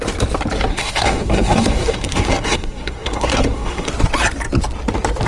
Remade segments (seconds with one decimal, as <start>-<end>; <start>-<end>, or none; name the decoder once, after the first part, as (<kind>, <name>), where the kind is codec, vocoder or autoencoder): 0.7-3.9 (codec, SNAC)

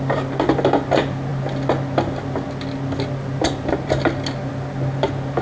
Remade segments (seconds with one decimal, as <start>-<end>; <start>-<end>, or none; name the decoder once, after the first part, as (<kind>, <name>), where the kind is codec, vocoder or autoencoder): none

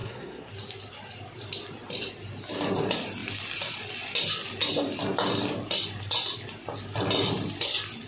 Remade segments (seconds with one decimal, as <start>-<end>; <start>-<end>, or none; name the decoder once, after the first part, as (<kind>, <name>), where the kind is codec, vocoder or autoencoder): 0.0-0.5 (codec, SNAC)

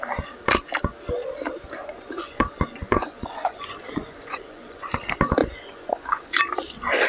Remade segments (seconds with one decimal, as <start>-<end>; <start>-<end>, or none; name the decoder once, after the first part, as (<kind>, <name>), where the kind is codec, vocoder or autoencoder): 1.8-5.0 (vocoder, Vocos); 5.4-6.4

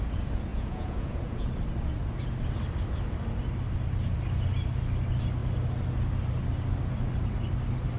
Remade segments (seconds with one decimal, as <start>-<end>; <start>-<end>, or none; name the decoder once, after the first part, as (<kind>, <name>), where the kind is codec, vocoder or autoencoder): 0.5-1.5 (vocoder, Vocos)

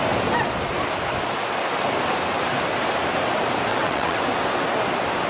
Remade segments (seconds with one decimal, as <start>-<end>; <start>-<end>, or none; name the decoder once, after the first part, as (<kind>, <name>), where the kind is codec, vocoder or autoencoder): 3.7-4.2 (vocoder, WaveNeXt)

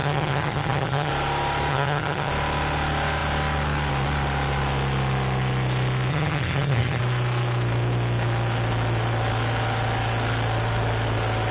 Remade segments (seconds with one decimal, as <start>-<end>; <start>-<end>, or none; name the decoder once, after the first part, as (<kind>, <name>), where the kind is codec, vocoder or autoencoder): 0.0-1.1 (vocoder, HiFi-GAN); 1.7-2.3; 6.1-7.0